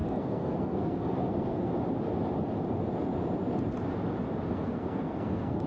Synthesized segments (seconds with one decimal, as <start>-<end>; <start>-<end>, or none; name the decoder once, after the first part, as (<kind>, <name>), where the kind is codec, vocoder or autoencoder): 0.0-1.7 (codec, SNAC); 4.5-5.7